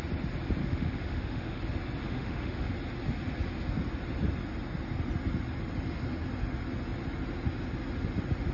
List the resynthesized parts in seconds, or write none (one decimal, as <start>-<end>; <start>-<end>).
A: 0.6-1.6; 2.0-2.7